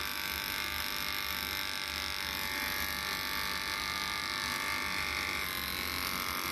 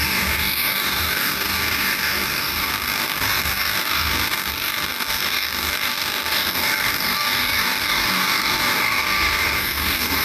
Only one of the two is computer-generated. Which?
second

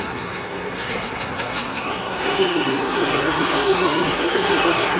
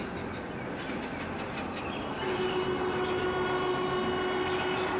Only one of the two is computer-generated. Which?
first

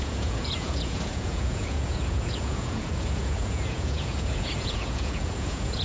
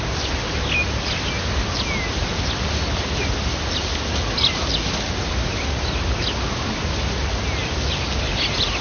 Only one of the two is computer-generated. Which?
first